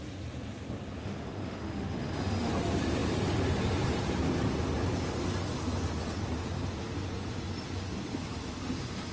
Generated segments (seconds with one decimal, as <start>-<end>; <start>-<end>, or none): 1.0-2.5